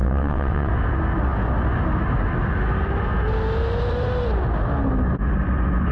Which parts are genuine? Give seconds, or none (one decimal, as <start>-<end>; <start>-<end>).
0.7-5.9